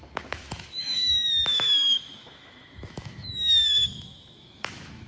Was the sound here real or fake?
fake